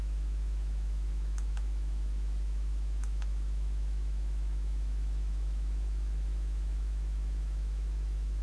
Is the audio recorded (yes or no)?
no